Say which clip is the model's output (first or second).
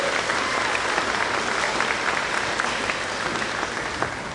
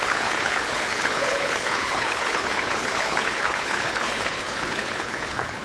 second